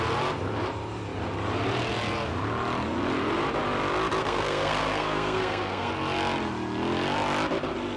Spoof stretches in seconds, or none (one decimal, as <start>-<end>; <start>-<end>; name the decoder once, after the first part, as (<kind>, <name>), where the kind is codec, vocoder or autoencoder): 4.2-5.9 (codec, SNAC)